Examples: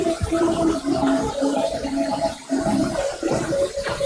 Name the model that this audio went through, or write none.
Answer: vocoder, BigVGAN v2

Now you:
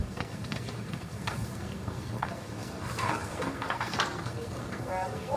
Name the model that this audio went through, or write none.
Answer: codec, SNAC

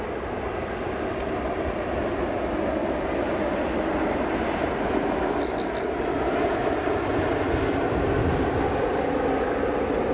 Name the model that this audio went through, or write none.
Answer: none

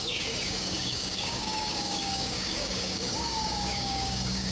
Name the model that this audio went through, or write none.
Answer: codec, DAC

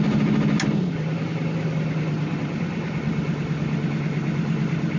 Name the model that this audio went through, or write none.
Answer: none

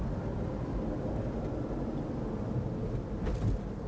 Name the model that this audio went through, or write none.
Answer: none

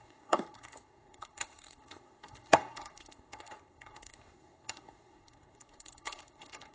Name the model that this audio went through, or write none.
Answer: codec, SNAC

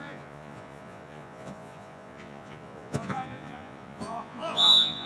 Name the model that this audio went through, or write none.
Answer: vocoder, Vocos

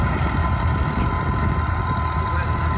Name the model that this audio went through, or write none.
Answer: none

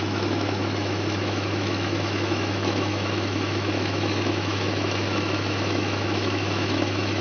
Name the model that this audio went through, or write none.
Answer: autoencoder, DAC-VAE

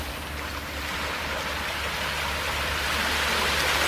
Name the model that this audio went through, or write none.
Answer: none